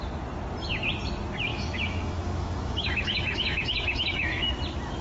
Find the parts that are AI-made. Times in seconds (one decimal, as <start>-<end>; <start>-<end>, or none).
1.5-4.5